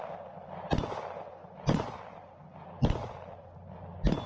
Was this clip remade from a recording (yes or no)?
no